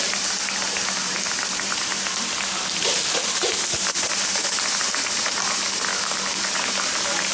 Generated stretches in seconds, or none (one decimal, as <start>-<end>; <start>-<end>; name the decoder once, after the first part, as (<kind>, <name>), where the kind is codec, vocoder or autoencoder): 5.9-6.5 (codec, DAC)